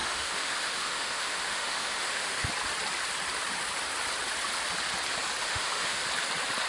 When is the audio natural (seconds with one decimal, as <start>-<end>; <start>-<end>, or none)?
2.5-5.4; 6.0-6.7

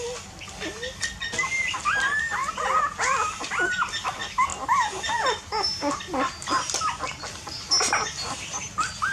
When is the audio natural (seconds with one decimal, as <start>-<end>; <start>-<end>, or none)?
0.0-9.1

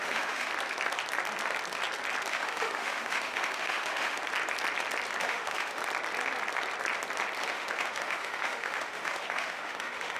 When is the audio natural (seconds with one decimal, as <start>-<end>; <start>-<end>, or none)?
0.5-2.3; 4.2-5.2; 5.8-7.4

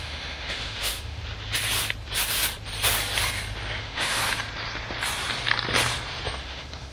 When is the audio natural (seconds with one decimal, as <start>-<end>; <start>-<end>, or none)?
1.2-3.8; 4.2-6.4

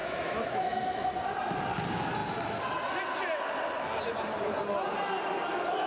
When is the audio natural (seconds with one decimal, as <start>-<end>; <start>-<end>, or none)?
1.1-5.9

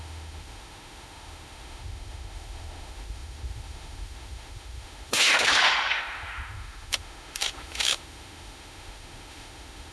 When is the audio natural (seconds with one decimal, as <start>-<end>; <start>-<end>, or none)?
none

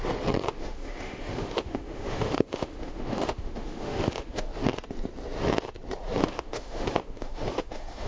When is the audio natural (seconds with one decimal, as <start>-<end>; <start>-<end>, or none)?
0.0-0.5; 4.5-6.2

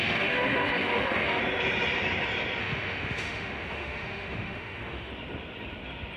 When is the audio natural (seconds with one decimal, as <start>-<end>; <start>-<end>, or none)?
1.4-2.6; 5.1-6.2